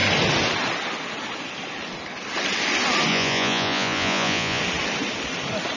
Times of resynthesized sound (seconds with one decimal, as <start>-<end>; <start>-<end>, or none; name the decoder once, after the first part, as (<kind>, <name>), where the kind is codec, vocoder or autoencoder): 3.1-4.6 (vocoder, Vocos)